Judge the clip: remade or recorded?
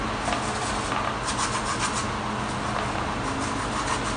recorded